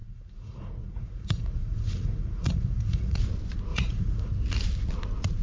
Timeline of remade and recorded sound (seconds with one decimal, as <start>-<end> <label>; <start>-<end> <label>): 0.0-3.2 remade; 3.2-3.7 recorded; 3.7-4.3 remade; 4.3-5.4 recorded